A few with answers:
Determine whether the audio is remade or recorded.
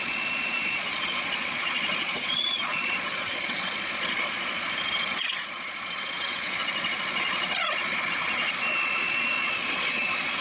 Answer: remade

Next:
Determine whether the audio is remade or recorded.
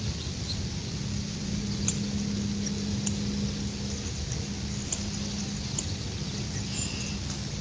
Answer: recorded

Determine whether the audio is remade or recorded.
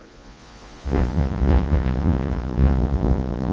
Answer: remade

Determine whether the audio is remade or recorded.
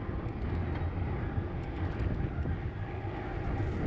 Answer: recorded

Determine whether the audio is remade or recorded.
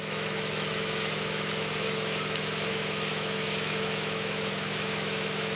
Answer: remade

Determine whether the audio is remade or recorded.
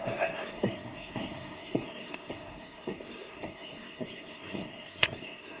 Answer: remade